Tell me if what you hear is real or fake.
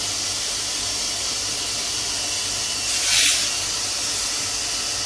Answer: fake